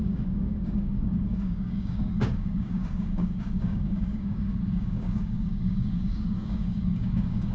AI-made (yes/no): yes